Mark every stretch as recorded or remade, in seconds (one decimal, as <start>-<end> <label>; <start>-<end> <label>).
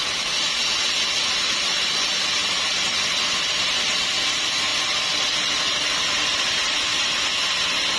0.0-2.4 recorded; 2.4-3.0 remade; 3.0-8.0 recorded